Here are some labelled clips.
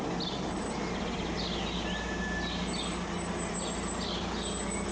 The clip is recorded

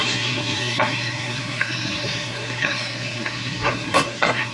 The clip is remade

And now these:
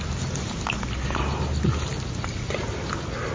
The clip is recorded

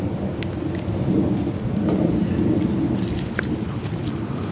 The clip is recorded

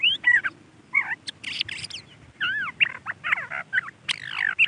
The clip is recorded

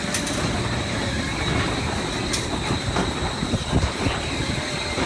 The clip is remade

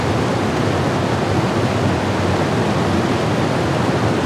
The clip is recorded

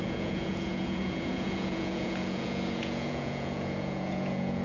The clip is remade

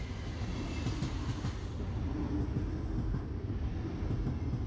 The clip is recorded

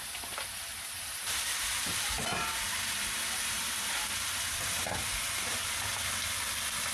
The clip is recorded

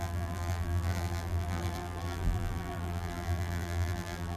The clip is remade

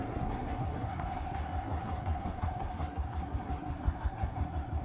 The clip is remade